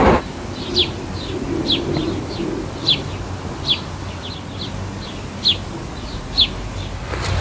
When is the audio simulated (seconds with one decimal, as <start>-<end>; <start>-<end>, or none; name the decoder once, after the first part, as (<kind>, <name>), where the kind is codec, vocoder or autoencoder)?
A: 5.8-6.3 (vocoder, Vocos)